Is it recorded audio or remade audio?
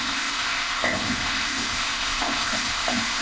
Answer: remade